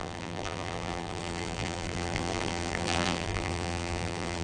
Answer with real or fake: fake